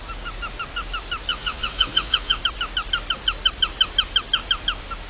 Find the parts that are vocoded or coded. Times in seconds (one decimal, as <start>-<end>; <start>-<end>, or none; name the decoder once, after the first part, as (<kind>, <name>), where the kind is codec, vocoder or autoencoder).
1.3-2.4 (vocoder, Vocos)